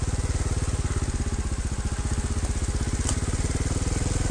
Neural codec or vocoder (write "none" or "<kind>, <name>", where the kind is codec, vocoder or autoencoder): none